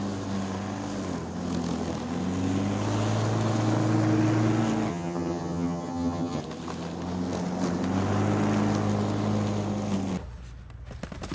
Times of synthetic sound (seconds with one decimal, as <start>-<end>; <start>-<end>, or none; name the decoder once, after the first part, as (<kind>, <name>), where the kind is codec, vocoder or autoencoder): 4.9-6.4 (vocoder, HiFi-GAN)